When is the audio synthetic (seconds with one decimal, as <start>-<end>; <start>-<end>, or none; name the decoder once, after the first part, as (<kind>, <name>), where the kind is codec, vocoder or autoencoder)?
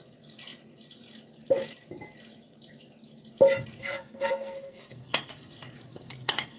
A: 3.8-5.5 (codec, SNAC); 5.9-6.6